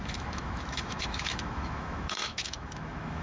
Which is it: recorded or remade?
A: remade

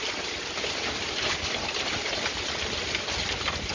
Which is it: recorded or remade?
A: recorded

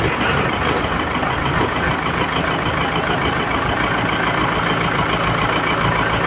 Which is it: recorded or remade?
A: recorded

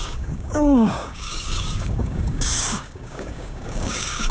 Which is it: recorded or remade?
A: remade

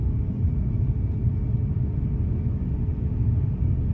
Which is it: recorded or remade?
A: recorded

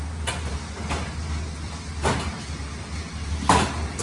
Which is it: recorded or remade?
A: recorded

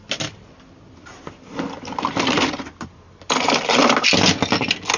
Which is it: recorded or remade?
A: recorded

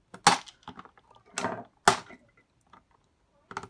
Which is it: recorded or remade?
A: recorded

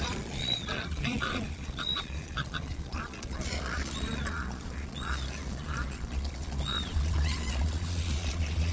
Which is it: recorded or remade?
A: remade